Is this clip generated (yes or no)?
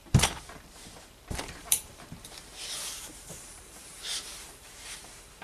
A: yes